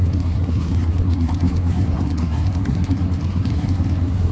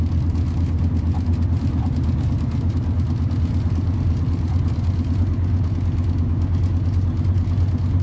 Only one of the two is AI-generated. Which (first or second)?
first